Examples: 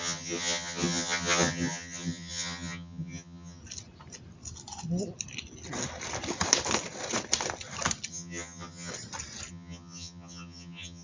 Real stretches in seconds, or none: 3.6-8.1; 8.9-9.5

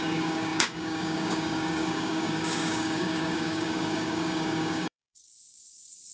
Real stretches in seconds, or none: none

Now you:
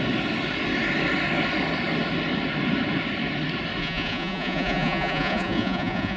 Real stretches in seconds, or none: 0.0-3.8

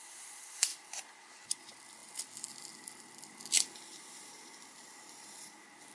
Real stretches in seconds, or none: 0.7-1.5; 2.0-3.0

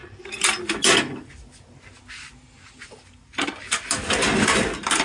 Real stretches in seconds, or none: 0.0-5.0

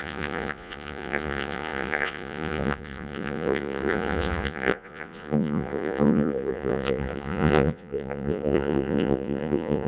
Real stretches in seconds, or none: none